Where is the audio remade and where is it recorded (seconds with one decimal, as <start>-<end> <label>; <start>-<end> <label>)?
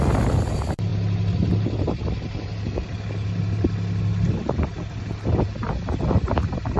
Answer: 0.0-6.8 recorded